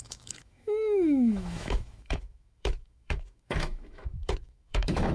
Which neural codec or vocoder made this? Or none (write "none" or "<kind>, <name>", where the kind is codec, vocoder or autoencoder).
autoencoder, DAC-VAE